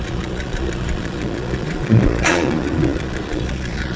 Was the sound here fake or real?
fake